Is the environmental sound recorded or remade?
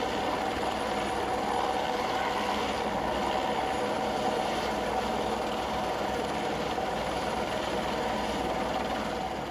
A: recorded